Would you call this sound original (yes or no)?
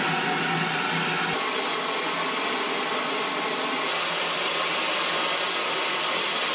yes